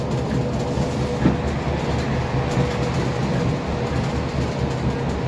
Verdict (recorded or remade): recorded